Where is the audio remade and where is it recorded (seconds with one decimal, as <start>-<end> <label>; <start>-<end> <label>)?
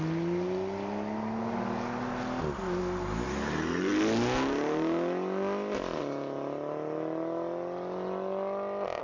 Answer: 0.0-9.0 recorded